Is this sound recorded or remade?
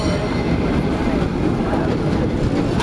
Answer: recorded